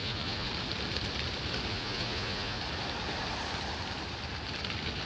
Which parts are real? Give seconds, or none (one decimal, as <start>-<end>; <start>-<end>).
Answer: 0.5-1.7; 2.6-5.1